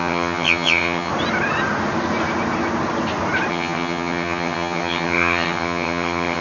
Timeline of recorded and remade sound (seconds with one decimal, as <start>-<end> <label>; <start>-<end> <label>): 0.0-1.1 remade; 1.1-3.5 recorded; 3.5-6.4 remade